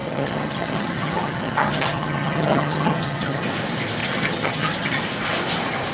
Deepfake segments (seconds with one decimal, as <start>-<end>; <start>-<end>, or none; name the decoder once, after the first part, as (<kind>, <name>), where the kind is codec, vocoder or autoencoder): 0.0-3.5 (vocoder, HiFi-GAN); 4.0-5.0